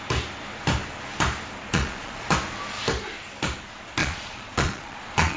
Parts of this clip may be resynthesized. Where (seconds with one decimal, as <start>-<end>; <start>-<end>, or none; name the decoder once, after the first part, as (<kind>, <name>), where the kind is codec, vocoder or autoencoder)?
1.7-2.3 (vocoder, Vocos); 4.0-5.4